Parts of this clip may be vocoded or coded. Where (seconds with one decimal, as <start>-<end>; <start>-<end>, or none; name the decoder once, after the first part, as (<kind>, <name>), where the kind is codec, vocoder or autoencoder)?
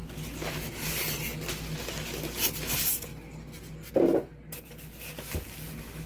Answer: none